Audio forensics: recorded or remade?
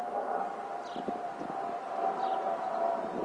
recorded